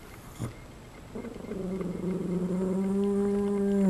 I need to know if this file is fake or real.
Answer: real